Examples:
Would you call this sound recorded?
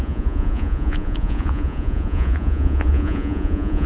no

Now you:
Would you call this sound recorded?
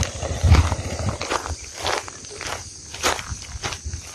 yes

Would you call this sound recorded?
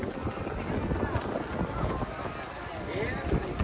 yes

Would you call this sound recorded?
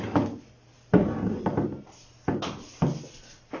yes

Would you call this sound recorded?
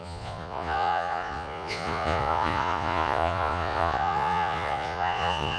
no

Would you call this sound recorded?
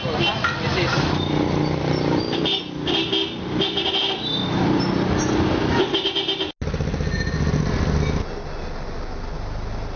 yes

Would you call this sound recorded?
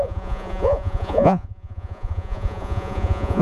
no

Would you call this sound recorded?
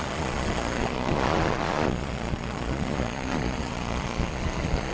no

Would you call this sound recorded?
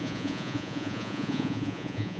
no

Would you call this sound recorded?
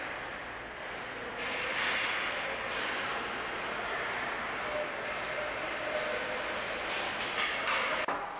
yes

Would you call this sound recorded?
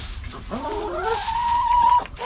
yes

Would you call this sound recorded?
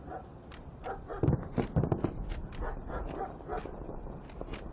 yes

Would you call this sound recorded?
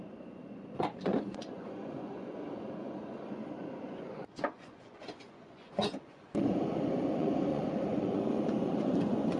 no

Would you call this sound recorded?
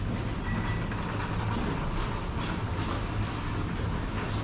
yes